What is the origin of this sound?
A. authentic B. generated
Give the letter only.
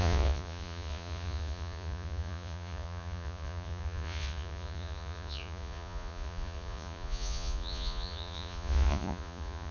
B